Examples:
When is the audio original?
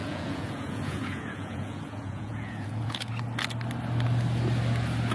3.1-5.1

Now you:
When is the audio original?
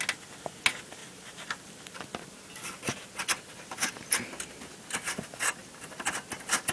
0.0-6.7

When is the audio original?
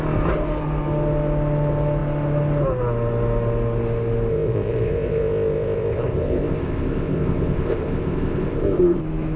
0.0-4.3; 9.0-9.4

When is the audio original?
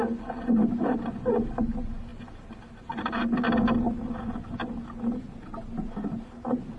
0.0-6.8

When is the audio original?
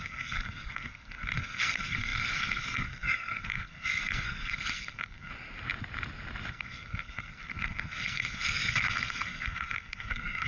5.3-6.5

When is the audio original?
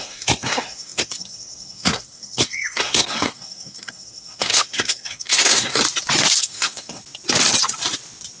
5.8-6.4; 7.0-8.4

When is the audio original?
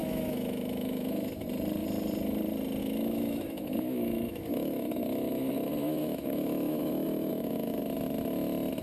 1.4-2.8; 7.8-8.8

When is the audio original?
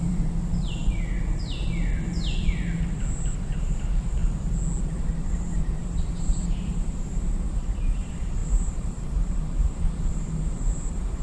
0.8-3.1; 4.2-4.8